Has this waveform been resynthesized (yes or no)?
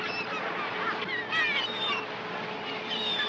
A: no